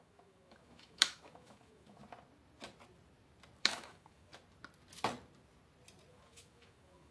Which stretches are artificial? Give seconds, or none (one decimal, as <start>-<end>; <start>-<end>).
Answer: 0.0-2.0; 3.6-4.3; 6.1-7.1

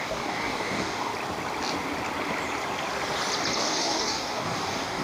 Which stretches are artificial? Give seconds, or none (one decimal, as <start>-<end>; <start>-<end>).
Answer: 0.0-1.1; 3.6-5.0

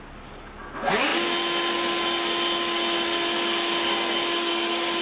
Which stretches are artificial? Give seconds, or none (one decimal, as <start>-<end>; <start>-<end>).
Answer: none